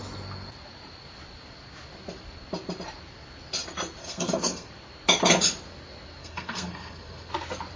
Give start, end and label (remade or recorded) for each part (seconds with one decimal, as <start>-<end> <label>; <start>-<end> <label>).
0.0-4.0 recorded; 4.0-4.7 remade; 4.7-6.2 recorded; 6.2-7.3 remade; 7.3-7.8 recorded